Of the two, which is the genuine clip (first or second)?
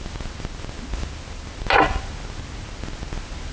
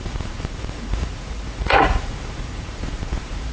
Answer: first